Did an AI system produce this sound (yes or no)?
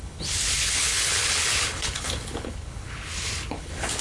yes